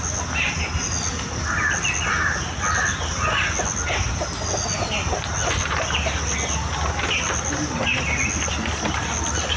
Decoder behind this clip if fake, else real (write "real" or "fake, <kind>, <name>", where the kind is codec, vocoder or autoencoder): real